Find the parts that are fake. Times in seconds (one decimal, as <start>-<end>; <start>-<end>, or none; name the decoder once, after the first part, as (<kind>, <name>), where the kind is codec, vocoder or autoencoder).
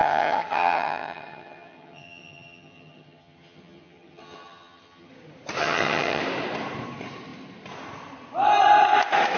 0.0-5.1 (vocoder, HiFi-GAN); 5.6-6.2